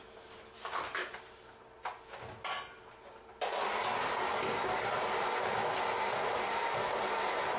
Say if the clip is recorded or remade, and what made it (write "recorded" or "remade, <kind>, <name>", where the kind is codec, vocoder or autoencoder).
recorded